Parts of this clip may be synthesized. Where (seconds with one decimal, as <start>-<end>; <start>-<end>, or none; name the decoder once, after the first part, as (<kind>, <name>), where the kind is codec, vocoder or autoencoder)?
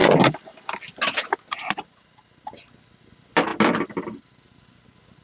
none